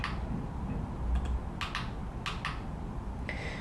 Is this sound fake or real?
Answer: real